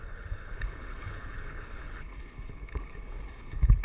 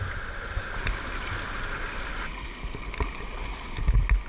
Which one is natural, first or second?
second